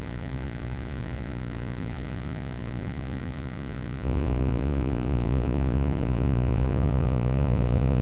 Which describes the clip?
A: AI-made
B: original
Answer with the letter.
A